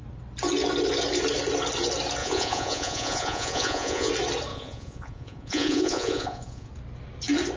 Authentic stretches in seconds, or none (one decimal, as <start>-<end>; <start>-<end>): 0.0-2.2; 4.1-4.5; 6.7-7.6